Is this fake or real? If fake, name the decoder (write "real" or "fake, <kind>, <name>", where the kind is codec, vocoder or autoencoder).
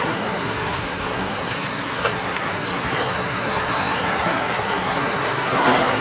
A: fake, codec, SNAC